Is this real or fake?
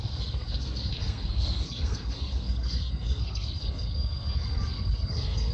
fake